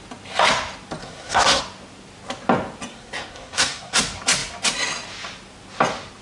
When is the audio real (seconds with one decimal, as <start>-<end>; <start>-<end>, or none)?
0.0-1.0; 1.6-2.9; 4.0-6.2